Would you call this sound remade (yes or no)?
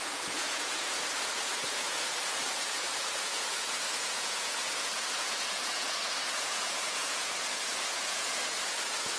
yes